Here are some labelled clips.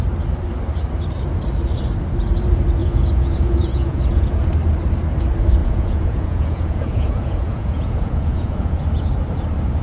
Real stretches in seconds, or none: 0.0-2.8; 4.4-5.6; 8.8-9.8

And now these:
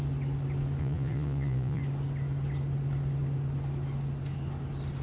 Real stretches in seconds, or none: 0.0-0.8; 1.8-5.0

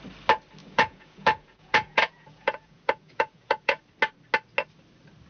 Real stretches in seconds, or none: 0.0-0.6; 3.8-5.3

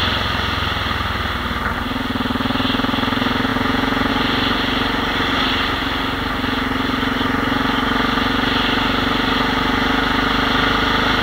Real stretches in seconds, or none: 0.0-3.5; 4.1-11.2

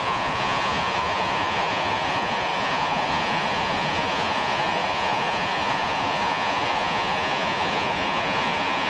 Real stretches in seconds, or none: none

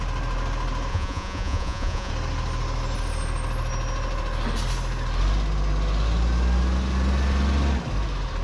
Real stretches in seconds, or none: 0.0-0.9; 2.1-8.4

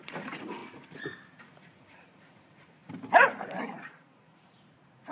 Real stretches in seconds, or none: 0.6-1.4; 2.8-3.9

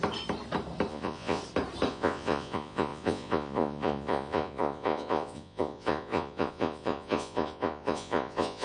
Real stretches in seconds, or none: 0.0-0.9; 1.4-1.9